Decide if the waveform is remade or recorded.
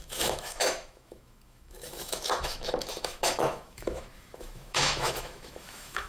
remade